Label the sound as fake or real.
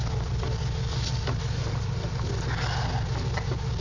real